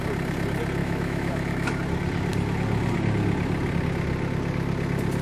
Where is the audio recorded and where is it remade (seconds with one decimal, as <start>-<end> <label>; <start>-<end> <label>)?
0.0-0.8 recorded; 0.8-1.8 remade; 1.8-5.2 recorded